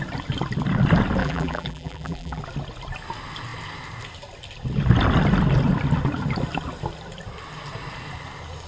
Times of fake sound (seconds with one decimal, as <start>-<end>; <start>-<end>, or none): 1.2-2.4